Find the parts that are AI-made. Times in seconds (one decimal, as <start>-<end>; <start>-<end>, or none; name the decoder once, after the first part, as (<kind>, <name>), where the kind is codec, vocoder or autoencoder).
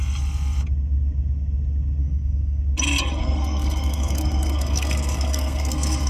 2.0-2.6 (codec, SNAC); 3.2-6.1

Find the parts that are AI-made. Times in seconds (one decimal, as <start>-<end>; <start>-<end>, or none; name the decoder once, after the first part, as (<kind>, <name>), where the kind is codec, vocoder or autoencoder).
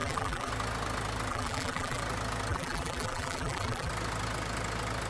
0.0-0.5 (vocoder, BigVGAN v2); 1.3-2.0; 2.5-3.9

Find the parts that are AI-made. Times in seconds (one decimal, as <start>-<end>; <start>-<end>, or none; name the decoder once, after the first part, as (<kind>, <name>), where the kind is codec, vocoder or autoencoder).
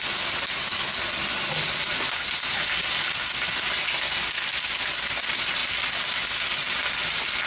none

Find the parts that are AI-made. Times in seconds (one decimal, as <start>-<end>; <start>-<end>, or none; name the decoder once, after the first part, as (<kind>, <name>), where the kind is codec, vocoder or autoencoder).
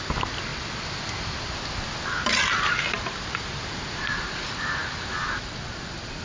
4.8-5.7 (vocoder, BigVGAN v2)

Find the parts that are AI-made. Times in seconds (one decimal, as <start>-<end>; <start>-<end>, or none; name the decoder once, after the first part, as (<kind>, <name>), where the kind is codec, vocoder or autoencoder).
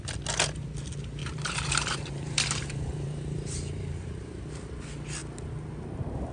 1.2-4.4 (vocoder, BigVGAN v2)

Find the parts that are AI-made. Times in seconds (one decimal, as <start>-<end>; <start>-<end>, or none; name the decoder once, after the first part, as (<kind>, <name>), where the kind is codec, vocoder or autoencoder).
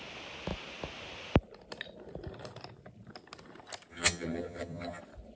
3.9-5.0 (vocoder, HiFi-GAN)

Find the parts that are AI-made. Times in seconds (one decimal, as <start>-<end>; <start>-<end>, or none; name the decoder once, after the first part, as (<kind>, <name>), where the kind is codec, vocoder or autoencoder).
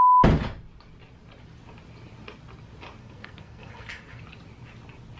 3.0-4.2 (codec, SNAC)